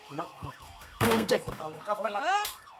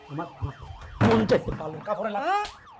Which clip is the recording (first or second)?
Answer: second